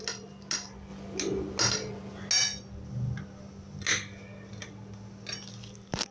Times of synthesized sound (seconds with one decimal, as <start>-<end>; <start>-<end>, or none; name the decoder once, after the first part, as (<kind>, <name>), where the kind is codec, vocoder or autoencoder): none